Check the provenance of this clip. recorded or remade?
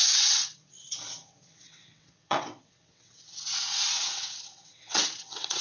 remade